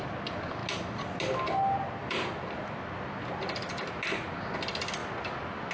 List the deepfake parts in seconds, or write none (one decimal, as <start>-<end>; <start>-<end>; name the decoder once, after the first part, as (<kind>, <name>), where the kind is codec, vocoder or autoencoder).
none